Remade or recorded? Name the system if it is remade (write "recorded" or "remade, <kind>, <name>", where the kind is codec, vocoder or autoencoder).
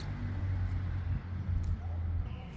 recorded